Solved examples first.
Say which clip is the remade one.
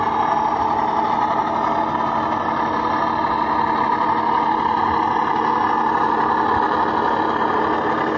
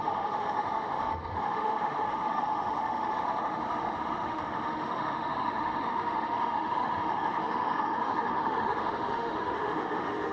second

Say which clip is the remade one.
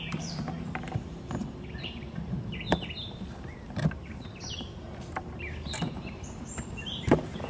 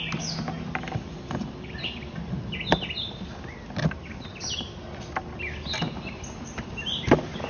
first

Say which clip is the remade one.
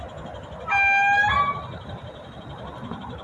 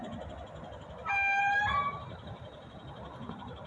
second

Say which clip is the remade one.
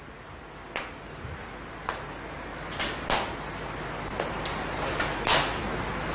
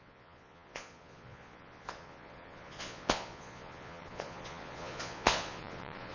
second